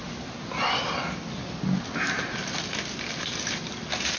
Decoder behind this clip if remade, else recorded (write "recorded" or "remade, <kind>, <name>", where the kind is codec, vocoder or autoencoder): recorded